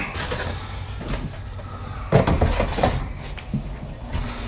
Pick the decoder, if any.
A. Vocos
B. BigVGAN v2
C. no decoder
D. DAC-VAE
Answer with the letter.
C